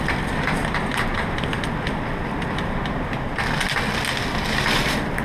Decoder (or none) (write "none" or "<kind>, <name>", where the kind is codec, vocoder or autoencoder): none